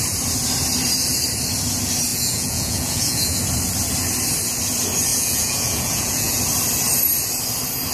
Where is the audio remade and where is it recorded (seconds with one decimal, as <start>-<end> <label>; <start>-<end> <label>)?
0.0-2.1 recorded; 2.1-3.4 remade; 3.4-5.1 recorded; 5.1-6.4 remade; 6.4-7.9 recorded